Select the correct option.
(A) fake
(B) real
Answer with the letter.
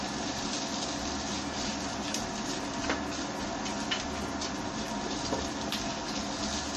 B